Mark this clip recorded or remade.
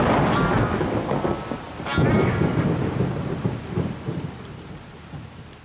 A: recorded